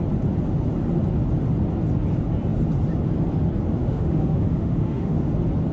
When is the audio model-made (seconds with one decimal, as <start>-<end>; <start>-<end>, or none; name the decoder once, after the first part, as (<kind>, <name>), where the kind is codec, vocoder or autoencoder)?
3.8-5.3 (autoencoder, DAC-VAE)